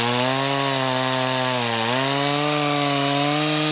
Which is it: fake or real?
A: real